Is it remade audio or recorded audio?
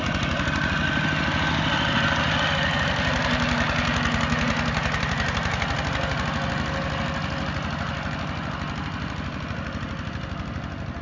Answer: recorded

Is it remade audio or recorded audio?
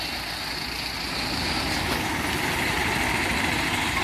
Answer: recorded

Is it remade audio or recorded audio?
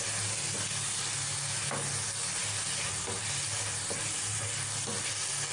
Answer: recorded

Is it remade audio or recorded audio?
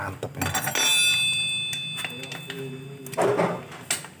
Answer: recorded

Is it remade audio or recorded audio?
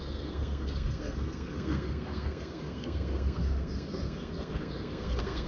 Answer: remade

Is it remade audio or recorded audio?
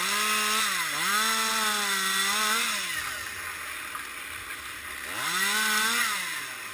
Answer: recorded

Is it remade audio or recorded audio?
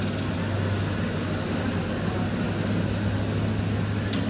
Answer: recorded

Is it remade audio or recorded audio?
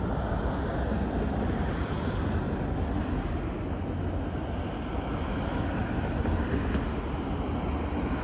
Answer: recorded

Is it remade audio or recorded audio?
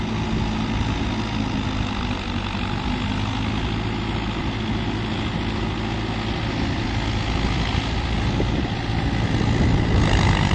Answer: recorded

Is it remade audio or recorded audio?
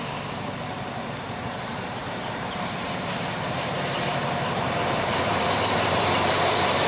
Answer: remade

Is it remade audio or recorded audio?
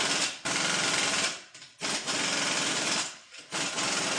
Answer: recorded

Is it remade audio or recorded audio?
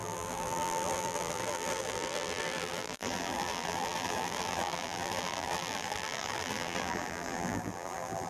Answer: remade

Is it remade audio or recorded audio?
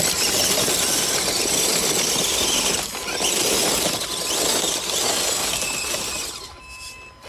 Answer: recorded